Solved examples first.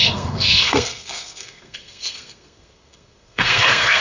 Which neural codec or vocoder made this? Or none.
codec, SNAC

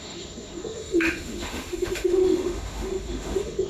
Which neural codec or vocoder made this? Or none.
autoencoder, DAC-VAE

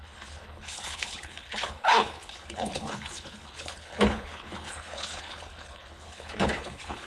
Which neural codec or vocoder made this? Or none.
codec, HILCodec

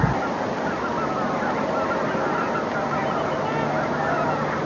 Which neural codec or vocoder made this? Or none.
none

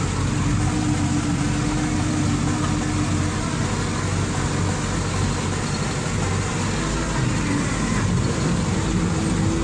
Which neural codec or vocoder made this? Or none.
none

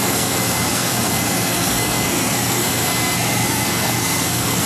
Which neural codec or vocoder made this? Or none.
codec, SNAC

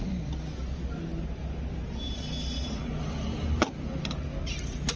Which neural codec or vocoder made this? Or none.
none